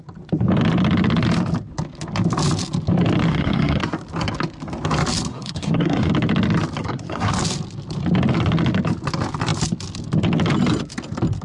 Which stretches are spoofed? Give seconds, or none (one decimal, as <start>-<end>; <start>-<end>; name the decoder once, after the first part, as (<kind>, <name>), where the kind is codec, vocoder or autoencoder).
3.3-3.8 (codec, SNAC); 5.3-6.1; 6.8-7.3